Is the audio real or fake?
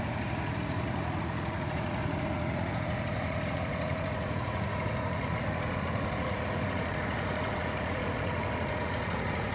fake